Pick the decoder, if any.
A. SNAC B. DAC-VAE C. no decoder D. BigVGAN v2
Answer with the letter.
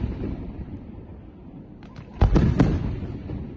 C